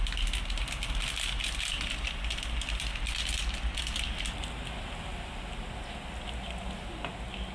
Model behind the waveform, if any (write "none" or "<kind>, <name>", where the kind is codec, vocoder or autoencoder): none